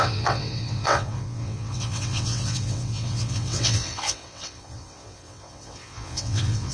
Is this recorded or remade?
remade